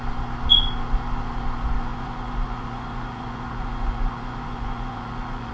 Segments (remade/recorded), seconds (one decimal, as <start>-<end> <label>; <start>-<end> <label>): 0.0-1.9 recorded; 1.9-5.5 remade